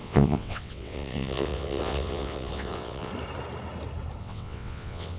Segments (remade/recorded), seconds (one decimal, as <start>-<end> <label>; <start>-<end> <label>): 0.0-3.1 remade; 3.1-4.2 recorded; 4.2-5.2 remade

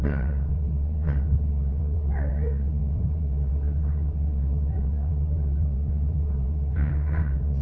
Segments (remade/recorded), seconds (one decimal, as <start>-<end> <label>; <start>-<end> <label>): 0.0-7.6 remade

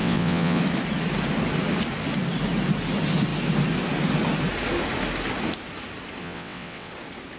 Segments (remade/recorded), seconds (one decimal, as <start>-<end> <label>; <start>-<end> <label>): 0.0-0.6 remade; 0.6-6.2 recorded; 6.2-6.9 remade; 6.9-7.4 recorded